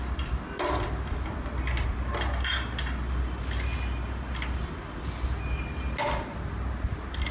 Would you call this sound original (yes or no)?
yes